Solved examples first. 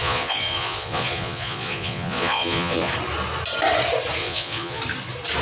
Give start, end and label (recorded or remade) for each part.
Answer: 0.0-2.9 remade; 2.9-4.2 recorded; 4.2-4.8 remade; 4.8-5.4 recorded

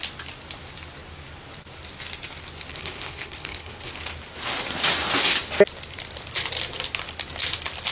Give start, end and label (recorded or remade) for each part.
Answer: 0.0-2.7 recorded; 2.7-3.9 remade; 3.9-7.9 recorded

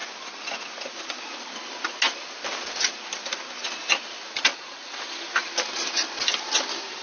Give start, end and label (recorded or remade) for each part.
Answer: 0.0-4.5 recorded; 4.5-5.1 remade; 5.1-7.0 recorded

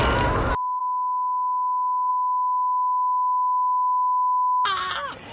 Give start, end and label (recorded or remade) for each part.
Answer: 0.0-0.8 recorded; 0.8-2.1 remade; 2.1-5.3 recorded